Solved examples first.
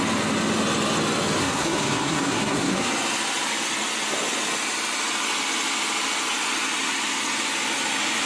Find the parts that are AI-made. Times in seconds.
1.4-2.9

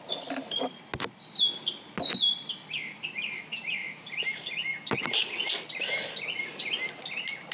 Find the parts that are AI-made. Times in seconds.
none